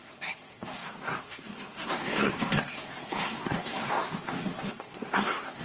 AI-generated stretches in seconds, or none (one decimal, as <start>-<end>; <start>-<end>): 0.0-5.6